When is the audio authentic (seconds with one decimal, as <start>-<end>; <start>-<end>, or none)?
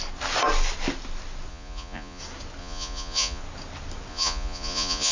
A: 0.0-1.5; 2.2-2.6; 3.4-4.1